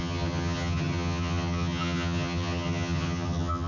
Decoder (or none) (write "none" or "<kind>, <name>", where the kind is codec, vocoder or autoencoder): vocoder, HiFi-GAN